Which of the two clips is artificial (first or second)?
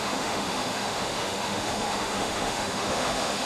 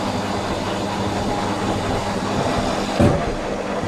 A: first